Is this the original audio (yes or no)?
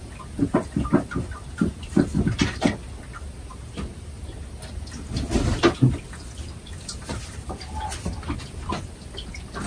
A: yes